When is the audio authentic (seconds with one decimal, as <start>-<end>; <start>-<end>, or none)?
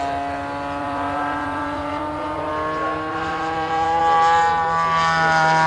0.0-0.8; 2.5-3.1; 4.0-5.7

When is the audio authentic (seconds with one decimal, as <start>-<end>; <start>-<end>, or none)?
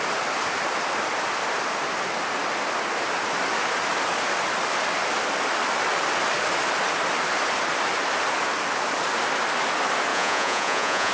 0.0-10.1